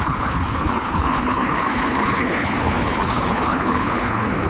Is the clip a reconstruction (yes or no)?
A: yes